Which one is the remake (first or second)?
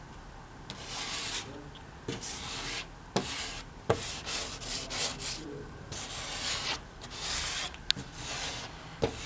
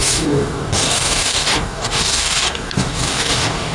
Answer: second